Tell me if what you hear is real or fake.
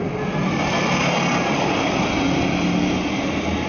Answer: real